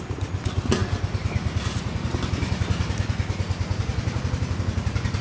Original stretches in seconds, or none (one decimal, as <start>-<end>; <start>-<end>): 0.0-5.2